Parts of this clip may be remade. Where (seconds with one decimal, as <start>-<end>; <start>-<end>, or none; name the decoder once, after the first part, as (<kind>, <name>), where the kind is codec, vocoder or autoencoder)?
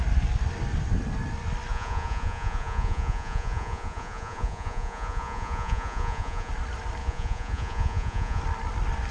1.7-6.5 (vocoder, Vocos); 7.0-8.4